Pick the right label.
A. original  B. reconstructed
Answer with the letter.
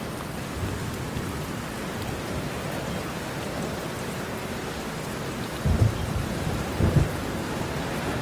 A